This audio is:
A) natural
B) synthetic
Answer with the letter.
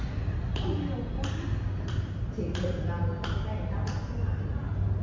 A